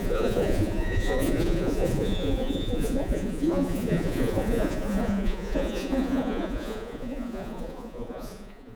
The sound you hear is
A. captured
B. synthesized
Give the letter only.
B